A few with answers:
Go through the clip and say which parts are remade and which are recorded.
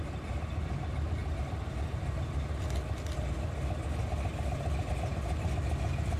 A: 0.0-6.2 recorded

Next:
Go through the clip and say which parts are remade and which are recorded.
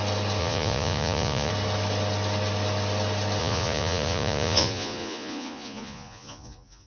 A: 0.0-0.4 recorded; 0.4-1.5 remade; 1.5-3.4 recorded; 3.4-6.9 remade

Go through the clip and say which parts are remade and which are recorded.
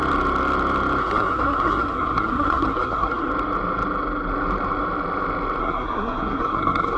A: 0.0-1.0 recorded; 1.0-3.3 remade; 3.3-5.6 recorded; 5.6-7.0 remade